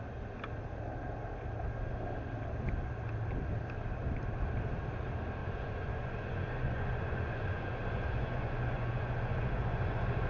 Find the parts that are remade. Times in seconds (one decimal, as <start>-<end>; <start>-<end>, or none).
5.4-10.3